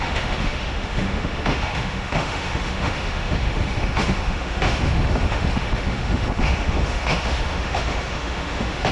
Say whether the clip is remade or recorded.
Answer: remade